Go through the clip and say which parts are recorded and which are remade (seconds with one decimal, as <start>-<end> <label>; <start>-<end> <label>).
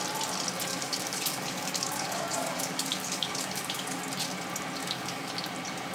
0.0-0.7 recorded; 0.7-4.0 remade; 4.0-4.8 recorded; 4.8-5.3 remade; 5.3-5.9 recorded